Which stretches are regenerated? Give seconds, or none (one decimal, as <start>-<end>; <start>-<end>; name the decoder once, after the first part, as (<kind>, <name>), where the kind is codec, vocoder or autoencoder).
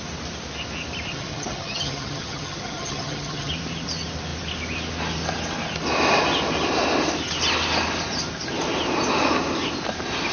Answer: 1.1-3.5 (vocoder, HiFi-GAN)